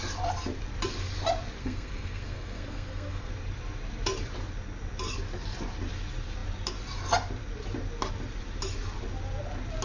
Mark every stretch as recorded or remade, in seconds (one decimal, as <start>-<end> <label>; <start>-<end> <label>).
0.0-1.6 recorded; 1.6-3.3 remade; 3.3-9.8 recorded